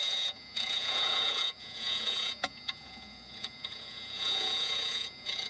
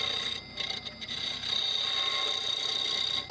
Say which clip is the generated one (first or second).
first